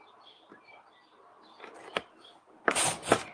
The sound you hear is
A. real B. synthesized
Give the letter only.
A